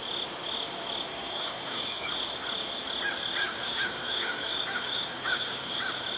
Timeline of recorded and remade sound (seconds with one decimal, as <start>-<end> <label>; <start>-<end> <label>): 0.0-1.1 recorded; 1.1-2.1 remade; 2.1-3.4 recorded; 3.4-5.8 remade; 5.8-6.2 recorded